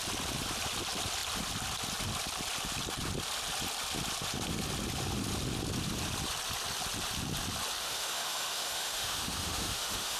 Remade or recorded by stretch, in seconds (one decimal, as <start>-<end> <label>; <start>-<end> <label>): 0.0-7.8 recorded; 7.8-10.2 remade